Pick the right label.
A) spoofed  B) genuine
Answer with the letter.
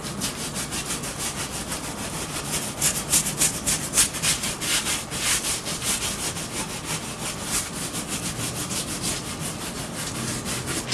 B